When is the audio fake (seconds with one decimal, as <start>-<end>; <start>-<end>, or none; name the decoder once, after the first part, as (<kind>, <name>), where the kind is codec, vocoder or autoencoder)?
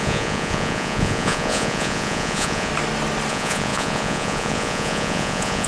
0.0-2.7 (vocoder, Vocos); 3.3-5.7